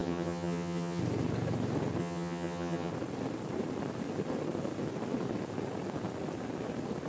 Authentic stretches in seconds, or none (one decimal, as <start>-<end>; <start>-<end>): 1.0-2.0; 2.9-7.1

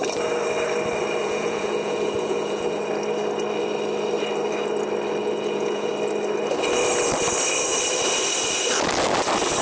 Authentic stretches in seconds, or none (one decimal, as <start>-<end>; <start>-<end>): 0.0-1.2; 2.8-5.2; 5.9-9.6

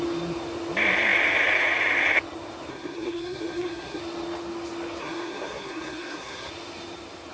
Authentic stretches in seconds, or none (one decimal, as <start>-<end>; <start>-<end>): 0.0-2.7; 4.0-5.0; 6.5-7.3

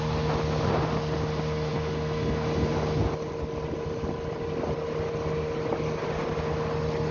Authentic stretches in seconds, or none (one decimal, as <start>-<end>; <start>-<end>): 0.0-7.1

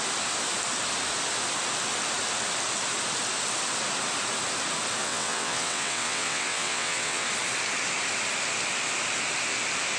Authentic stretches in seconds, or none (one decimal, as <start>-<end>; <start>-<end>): 0.0-5.0; 7.3-10.0

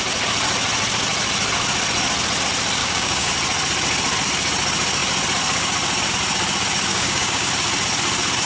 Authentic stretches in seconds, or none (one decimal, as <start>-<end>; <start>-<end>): 0.0-2.8; 3.3-6.9; 7.5-8.5

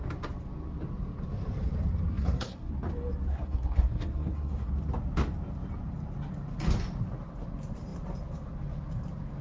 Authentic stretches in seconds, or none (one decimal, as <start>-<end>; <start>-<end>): 0.0-2.1; 2.7-3.3; 4.7-9.4

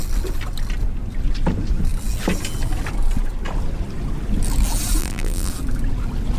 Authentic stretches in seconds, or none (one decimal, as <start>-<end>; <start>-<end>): 0.0-5.0; 5.5-6.4